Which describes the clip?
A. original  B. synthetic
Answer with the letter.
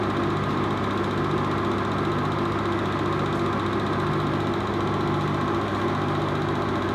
A